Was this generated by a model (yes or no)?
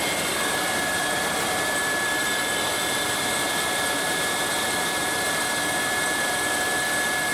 yes